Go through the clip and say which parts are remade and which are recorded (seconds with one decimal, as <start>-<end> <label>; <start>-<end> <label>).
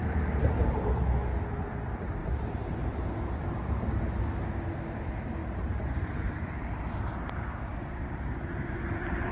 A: 0.0-1.1 remade; 1.1-2.2 recorded; 2.2-3.0 remade; 3.0-5.4 recorded; 5.4-7.5 remade; 7.5-8.0 recorded; 8.0-9.3 remade